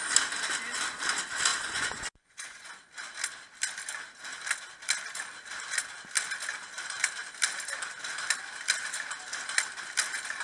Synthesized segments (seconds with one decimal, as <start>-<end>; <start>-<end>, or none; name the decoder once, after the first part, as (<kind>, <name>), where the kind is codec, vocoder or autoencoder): 1.5-2.7 (vocoder, Vocos)